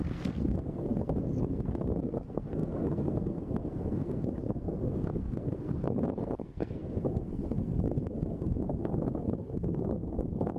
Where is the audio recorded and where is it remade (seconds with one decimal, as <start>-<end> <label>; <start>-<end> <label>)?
0.0-10.6 remade